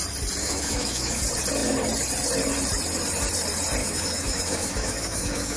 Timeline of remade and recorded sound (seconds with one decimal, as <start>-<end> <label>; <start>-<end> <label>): 0.0-0.4 recorded; 0.4-1.2 remade; 1.2-3.8 recorded; 3.8-5.6 remade